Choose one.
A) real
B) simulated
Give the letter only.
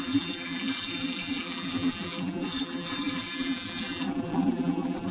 B